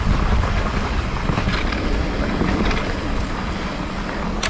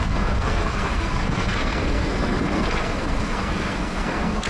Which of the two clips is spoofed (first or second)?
second